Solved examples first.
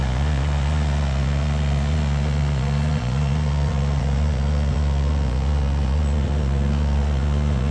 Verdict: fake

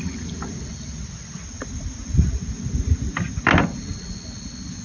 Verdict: real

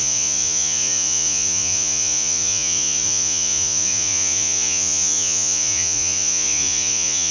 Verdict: fake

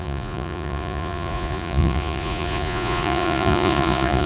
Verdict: fake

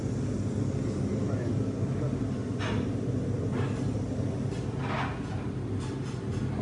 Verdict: real